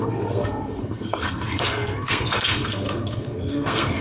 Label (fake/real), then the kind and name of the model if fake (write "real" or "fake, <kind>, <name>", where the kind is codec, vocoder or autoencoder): fake, codec, SNAC